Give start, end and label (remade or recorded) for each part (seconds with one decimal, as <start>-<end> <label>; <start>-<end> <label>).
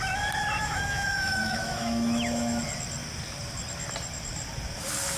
0.0-0.6 recorded; 0.6-2.6 remade; 2.6-5.2 recorded